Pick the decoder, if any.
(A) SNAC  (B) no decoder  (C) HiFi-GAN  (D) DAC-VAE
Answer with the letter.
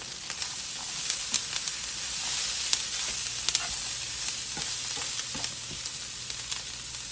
B